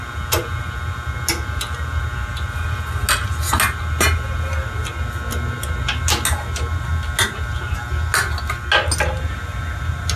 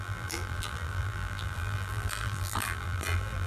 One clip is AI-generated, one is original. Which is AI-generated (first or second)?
second